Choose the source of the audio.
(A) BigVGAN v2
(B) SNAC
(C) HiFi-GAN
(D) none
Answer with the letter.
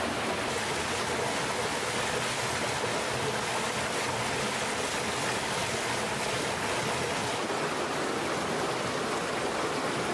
D